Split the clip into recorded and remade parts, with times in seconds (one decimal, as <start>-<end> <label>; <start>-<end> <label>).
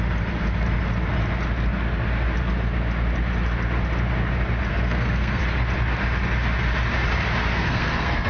0.0-4.7 recorded; 4.7-5.4 remade; 5.4-7.5 recorded; 7.5-8.3 remade